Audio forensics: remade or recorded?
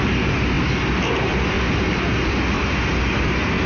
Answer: recorded